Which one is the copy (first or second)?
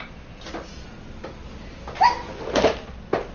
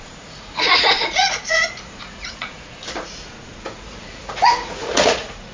second